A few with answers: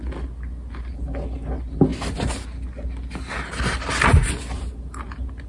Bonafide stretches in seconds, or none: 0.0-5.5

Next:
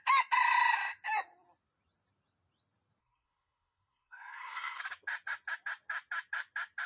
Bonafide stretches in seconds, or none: 0.0-3.0; 4.8-6.9